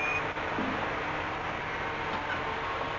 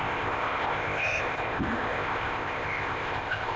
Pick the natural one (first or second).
first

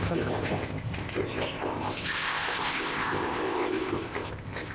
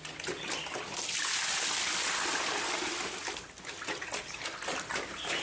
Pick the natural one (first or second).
second